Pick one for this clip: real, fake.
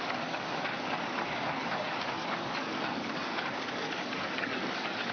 fake